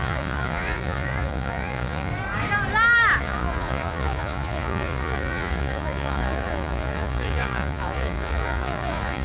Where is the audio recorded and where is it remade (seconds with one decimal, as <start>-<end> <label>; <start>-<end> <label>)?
0.0-2.1 remade; 2.1-3.2 recorded; 3.2-9.2 remade

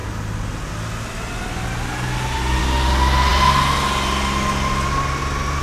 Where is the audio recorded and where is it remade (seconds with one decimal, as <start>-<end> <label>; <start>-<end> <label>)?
0.0-5.6 recorded

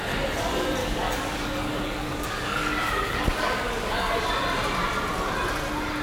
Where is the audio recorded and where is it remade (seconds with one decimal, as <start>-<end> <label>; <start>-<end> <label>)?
0.0-0.8 recorded; 0.8-4.2 remade; 4.2-6.0 recorded

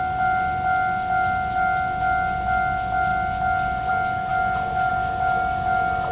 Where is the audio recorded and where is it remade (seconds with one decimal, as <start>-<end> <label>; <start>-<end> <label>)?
0.0-6.1 recorded